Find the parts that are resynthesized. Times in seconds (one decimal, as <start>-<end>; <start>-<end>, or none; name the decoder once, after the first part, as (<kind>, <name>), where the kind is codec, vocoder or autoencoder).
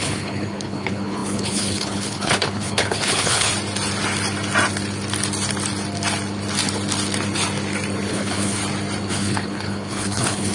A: 0.0-3.5 (codec, HILCodec); 8.1-8.6; 9.1-10.5